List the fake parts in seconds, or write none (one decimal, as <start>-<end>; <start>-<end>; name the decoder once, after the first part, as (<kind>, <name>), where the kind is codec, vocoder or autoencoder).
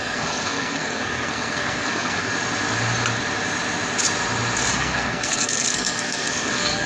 0.0-2.3 (codec, SNAC); 4.7-6.9